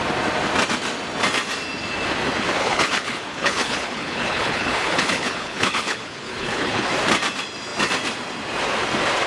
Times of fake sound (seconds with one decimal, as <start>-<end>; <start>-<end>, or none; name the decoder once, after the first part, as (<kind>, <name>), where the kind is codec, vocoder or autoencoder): 2.6-6.9 (codec, HILCodec)